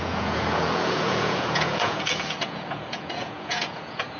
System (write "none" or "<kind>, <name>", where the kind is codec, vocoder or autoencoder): vocoder, Vocos